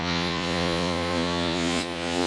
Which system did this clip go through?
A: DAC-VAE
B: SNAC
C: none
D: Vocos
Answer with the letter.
D